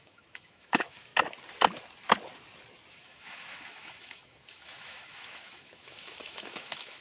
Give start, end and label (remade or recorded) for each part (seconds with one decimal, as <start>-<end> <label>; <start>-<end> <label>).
0.0-1.1 remade; 1.1-2.9 recorded; 2.9-7.0 remade